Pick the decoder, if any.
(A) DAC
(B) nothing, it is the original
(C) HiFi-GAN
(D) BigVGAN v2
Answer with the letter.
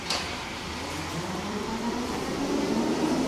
D